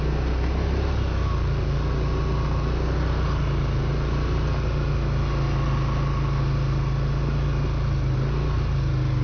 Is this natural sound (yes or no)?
yes